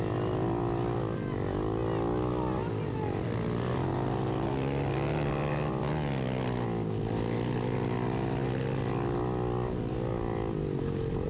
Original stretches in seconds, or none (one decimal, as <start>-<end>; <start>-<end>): 0.0-11.3